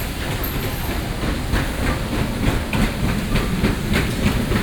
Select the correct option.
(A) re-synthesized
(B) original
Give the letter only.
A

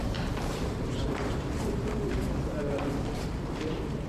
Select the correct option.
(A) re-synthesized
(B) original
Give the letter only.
A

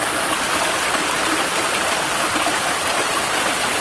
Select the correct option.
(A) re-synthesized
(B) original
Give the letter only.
B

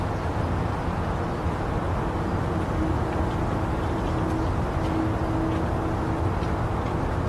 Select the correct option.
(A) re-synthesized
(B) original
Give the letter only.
B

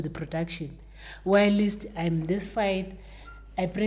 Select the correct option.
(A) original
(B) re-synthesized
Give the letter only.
A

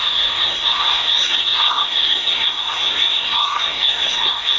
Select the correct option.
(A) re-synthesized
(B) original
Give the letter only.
A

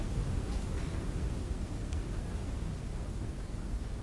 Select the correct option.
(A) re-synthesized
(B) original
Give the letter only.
A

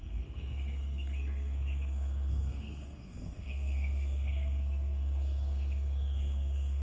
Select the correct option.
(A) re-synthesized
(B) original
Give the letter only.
A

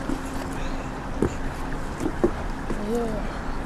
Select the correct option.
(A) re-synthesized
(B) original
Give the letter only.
B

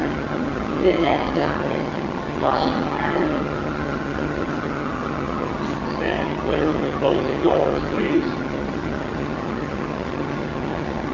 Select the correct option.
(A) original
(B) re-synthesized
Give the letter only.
B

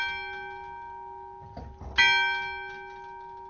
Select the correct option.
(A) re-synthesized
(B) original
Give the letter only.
B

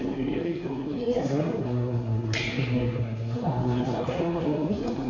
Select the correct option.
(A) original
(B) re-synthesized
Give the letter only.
B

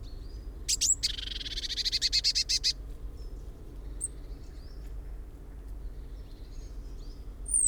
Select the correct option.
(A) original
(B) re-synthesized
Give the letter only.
A